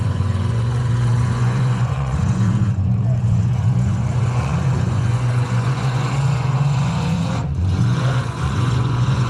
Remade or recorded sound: remade